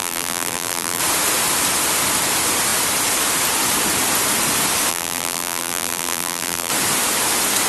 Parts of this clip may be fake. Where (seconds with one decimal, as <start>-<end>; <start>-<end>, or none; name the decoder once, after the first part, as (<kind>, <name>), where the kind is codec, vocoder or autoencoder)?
0.0-1.0 (vocoder, BigVGAN v2); 4.9-6.7